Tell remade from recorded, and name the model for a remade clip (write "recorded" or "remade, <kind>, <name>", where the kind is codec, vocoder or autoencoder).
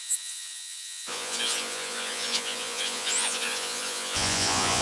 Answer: remade, vocoder, Vocos